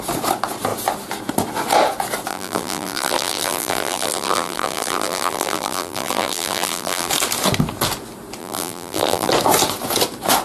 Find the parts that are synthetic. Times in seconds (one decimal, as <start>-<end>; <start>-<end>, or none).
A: 2.3-7.1; 8.4-9.3